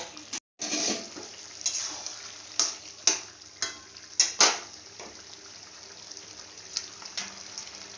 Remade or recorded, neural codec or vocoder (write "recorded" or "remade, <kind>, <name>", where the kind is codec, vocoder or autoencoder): recorded